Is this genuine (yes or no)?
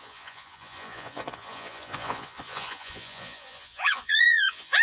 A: no